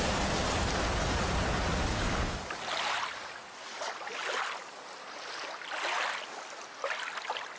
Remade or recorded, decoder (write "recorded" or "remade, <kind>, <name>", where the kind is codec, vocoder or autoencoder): recorded